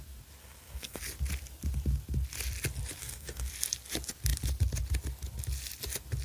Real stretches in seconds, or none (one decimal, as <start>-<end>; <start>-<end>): 0.0-0.4; 1.0-3.0; 3.5-6.2